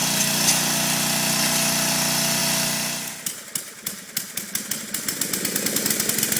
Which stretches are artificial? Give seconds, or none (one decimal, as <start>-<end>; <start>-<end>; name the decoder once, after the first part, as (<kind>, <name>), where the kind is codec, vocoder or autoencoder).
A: none

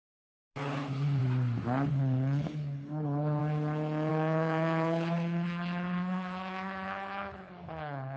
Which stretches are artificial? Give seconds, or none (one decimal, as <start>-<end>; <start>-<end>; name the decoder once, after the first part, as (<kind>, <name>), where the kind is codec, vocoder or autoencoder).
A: 0.0-1.2 (codec, HILCodec); 1.9-3.4; 4.1-8.2

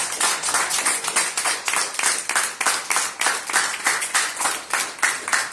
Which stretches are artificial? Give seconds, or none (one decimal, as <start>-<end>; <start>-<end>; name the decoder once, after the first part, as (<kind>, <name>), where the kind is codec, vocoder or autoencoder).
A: 0.0-1.7 (vocoder, Vocos); 3.7-4.5

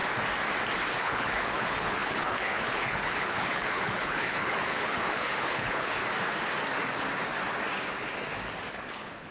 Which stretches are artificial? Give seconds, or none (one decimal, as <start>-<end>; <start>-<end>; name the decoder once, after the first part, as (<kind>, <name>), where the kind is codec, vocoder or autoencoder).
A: 0.9-6.0 (codec, HILCodec); 8.7-9.3

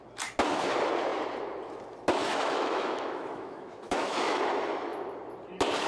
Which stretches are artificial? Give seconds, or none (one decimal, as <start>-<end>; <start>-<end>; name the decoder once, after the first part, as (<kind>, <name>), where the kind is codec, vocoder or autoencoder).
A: 2.2-4.4 (autoencoder, DAC-VAE)

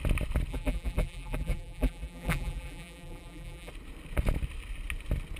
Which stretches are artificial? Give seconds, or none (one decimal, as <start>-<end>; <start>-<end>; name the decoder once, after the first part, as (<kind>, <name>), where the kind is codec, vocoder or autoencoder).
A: 0.5-3.7 (vocoder, BigVGAN v2)

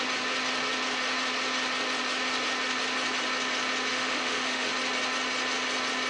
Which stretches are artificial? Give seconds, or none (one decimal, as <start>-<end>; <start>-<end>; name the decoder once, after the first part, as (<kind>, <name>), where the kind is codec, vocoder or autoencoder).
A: 3.9-4.7 (autoencoder, DAC-VAE)

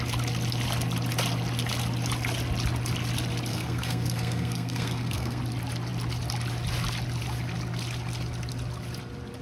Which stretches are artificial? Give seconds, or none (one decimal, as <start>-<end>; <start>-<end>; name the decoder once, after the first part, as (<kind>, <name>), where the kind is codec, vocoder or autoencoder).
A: 3.5-5.4 (codec, SNAC)